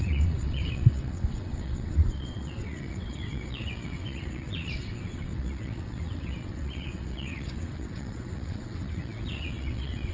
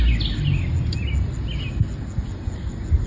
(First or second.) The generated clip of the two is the first